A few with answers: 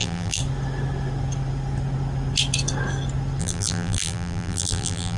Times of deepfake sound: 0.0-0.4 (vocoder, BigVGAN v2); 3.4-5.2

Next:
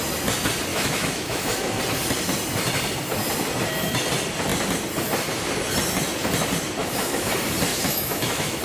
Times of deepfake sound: 0.7-1.8 (autoencoder, DAC-VAE); 6.8-7.3; 7.7-8.6

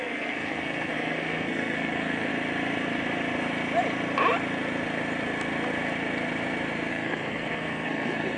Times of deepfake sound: 0.0-2.3 (codec, SNAC); 6.9-8.4

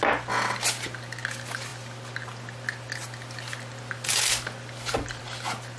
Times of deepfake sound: none